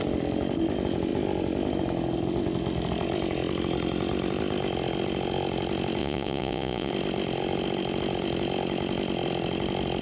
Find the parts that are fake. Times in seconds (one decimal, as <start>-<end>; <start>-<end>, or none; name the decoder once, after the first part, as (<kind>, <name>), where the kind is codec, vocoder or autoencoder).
6.0-6.9 (vocoder, Vocos)